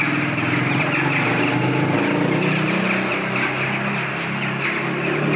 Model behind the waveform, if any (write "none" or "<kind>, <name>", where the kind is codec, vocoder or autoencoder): none